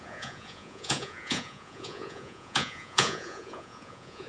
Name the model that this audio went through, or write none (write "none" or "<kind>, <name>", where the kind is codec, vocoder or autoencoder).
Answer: vocoder, Vocos